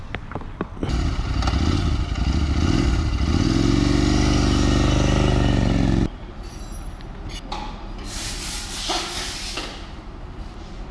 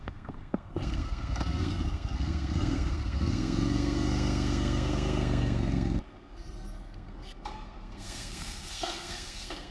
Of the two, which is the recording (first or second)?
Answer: first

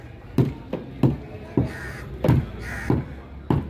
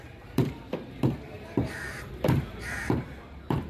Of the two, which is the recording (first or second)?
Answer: first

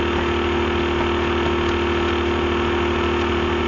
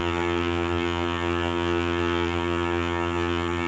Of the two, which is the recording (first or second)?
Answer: first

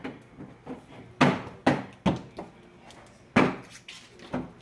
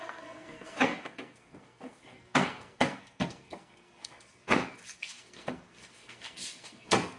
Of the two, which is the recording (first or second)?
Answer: first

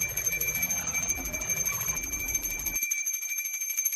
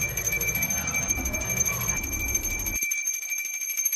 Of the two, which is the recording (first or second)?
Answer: second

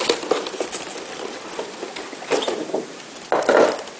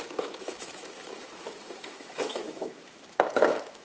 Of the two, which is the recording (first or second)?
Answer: first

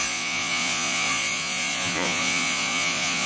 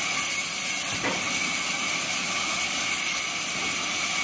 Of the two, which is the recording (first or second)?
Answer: second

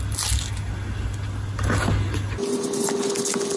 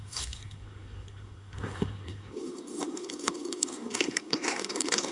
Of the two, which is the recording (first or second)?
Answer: first